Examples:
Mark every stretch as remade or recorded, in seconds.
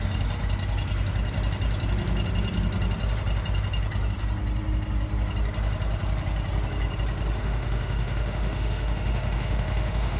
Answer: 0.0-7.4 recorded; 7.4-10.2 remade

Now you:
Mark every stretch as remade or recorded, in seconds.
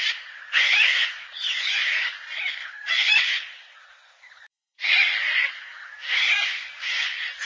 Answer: 0.0-7.4 recorded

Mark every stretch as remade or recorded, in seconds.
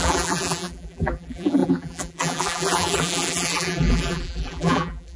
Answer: 0.0-5.2 remade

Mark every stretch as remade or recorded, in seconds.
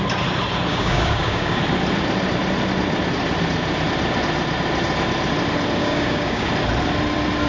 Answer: 0.0-0.7 recorded; 0.7-1.6 remade; 1.6-5.8 recorded; 5.8-6.5 remade; 6.5-7.5 recorded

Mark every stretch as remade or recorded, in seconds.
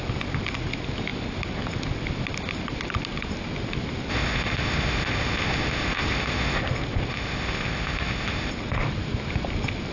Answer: 0.0-4.1 recorded; 4.1-6.6 remade; 6.6-7.1 recorded; 7.1-8.5 remade; 8.5-9.9 recorded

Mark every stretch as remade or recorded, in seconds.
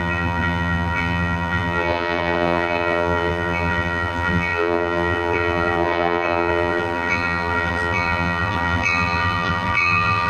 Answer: 0.0-10.3 remade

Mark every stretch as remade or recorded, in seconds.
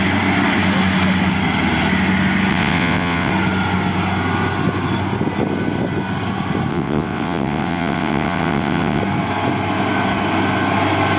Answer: 0.0-2.5 recorded; 2.5-3.3 remade; 3.3-6.7 recorded; 6.7-9.0 remade; 9.0-11.2 recorded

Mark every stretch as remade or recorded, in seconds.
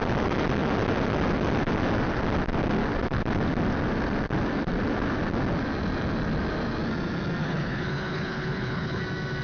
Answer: 0.0-7.4 recorded; 7.4-9.0 remade; 9.0-9.4 recorded